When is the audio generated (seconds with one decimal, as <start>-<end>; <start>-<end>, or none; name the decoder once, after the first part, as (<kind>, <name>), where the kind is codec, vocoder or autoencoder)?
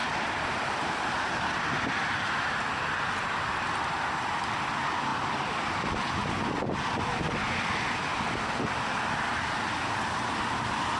5.1-5.7 (vocoder, BigVGAN v2); 6.2-7.8